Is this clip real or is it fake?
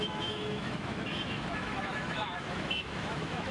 fake